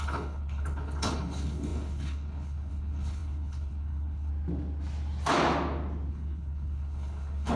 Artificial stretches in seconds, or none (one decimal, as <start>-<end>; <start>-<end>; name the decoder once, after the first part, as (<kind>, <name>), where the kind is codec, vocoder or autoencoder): 0.0-4.3 (codec, HILCodec); 6.1-7.6